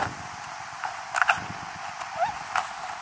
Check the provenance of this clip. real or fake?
real